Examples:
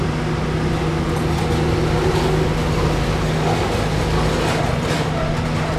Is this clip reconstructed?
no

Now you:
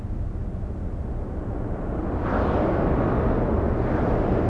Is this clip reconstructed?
no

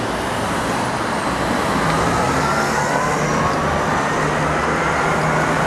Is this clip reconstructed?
no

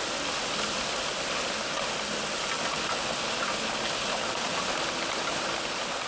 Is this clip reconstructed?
no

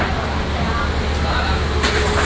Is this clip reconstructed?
no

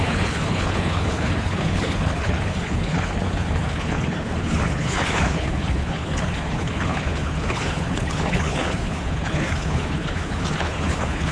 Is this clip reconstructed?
yes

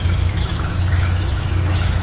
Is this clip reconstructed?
yes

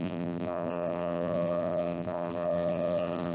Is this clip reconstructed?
yes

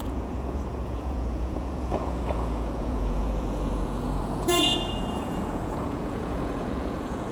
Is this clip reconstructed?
yes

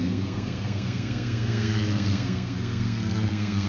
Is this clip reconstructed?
yes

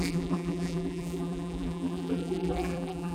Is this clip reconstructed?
yes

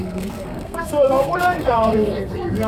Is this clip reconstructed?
yes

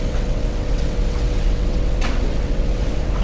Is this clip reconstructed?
yes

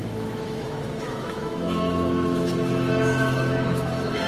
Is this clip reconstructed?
yes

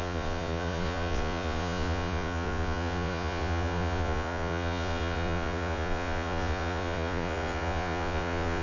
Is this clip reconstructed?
yes